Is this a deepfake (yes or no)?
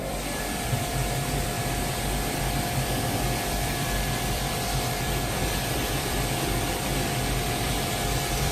yes